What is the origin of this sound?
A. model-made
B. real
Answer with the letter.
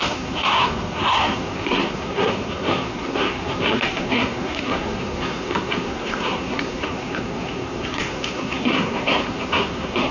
A